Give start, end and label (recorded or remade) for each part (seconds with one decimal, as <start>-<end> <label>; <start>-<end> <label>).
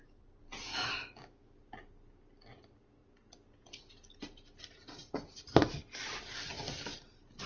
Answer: 0.0-0.7 recorded; 0.7-1.5 remade; 1.5-7.5 recorded